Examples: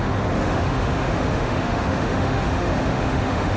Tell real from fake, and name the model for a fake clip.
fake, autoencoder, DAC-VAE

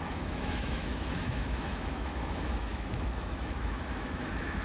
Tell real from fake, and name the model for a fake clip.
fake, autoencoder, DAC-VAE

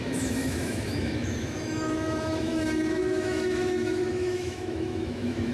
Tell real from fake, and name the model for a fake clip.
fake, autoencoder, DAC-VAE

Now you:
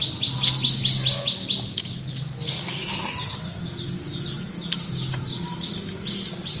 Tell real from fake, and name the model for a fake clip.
real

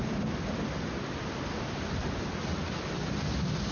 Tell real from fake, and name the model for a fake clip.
real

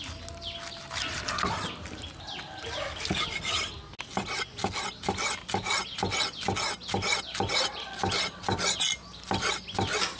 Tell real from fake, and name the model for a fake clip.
real